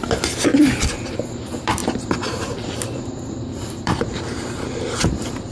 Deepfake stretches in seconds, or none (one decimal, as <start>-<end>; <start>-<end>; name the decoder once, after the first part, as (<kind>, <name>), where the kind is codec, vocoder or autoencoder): 0.9-5.5 (vocoder, BigVGAN v2)